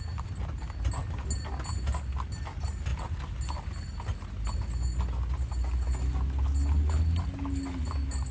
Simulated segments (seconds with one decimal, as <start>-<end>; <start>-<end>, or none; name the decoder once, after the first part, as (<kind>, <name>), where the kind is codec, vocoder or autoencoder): none